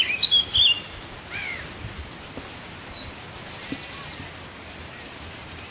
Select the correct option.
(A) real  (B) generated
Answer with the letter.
A